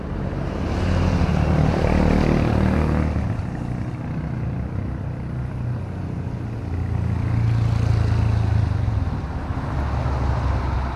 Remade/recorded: recorded